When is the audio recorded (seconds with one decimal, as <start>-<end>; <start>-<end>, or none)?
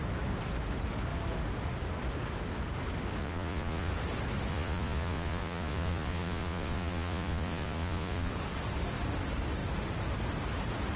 0.0-3.2; 3.9-4.5; 8.3-11.0